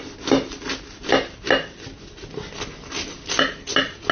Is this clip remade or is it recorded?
recorded